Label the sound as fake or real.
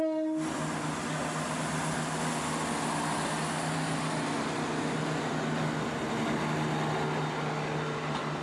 real